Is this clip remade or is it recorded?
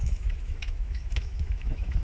remade